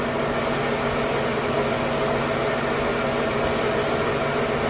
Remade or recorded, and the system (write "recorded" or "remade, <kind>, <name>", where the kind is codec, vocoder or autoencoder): recorded